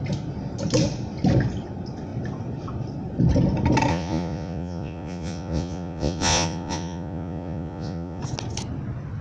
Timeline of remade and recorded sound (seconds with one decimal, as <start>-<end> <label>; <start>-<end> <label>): 0.0-3.9 recorded; 3.9-8.2 remade; 8.2-9.2 recorded